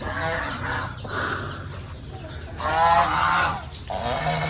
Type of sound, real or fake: real